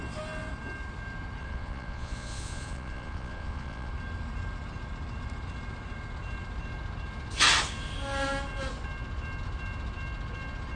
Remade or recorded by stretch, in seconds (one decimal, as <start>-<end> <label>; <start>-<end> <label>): 0.0-1.4 recorded; 1.4-3.9 remade; 3.9-10.8 recorded